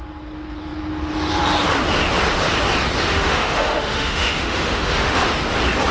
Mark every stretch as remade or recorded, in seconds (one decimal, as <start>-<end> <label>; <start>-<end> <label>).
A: 0.0-3.1 recorded; 3.1-5.2 remade; 5.2-5.9 recorded